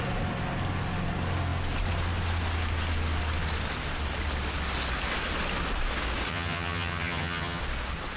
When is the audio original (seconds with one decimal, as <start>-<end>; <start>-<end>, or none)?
0.0-6.3; 7.6-8.2